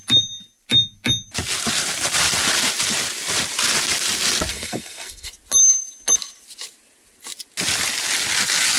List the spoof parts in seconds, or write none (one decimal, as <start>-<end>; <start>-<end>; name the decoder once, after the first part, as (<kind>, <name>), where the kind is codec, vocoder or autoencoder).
4.5-5.3 (codec, SNAC)